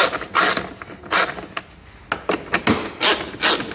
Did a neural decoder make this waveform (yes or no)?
no